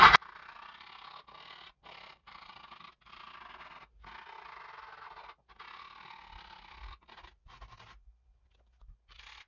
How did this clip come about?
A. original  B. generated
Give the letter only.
A